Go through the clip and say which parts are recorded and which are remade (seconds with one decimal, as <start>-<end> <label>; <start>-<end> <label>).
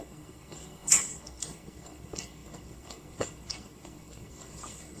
0.0-5.0 remade